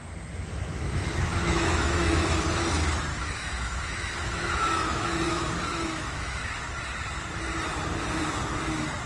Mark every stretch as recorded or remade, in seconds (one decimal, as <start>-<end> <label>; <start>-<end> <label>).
0.0-1.3 recorded; 1.3-2.3 remade; 2.3-3.1 recorded; 3.1-6.6 remade; 6.6-9.1 recorded